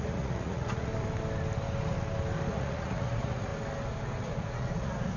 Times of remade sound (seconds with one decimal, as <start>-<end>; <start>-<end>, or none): 0.0-0.9; 2.5-3.5; 4.2-5.2